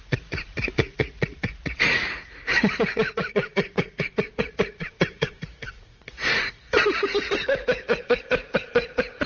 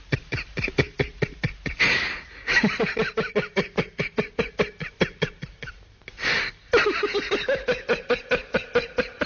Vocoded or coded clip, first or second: first